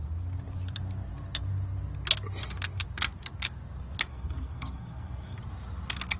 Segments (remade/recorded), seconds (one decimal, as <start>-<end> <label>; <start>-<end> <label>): 0.0-4.1 recorded; 4.1-5.4 remade; 5.4-6.2 recorded